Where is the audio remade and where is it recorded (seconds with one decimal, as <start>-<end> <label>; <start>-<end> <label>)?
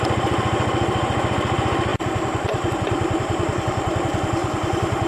0.0-1.9 remade; 1.9-2.7 recorded; 2.7-5.1 remade